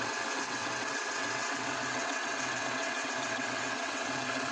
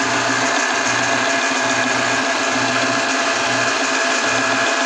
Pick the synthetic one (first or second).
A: first